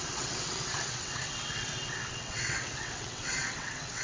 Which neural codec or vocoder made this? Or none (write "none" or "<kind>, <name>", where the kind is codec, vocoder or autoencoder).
vocoder, WaveNeXt